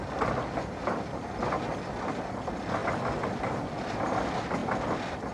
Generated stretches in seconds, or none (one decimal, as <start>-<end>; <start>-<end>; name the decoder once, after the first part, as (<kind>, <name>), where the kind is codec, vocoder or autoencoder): none